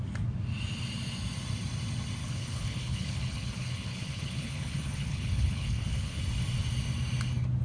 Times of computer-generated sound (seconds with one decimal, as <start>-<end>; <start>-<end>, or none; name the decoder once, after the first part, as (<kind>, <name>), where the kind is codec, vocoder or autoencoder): 2.2-6.2 (codec, HILCodec)